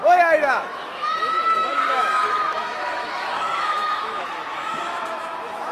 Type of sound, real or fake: fake